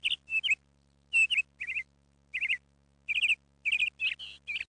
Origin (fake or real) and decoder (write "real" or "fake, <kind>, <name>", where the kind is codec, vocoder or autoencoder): real